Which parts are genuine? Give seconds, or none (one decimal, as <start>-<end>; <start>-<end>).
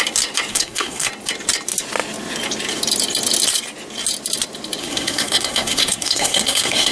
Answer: 0.0-0.5; 1.1-4.8